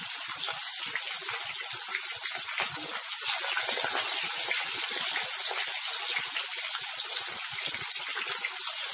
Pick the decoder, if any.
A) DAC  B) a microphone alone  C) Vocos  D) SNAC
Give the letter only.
B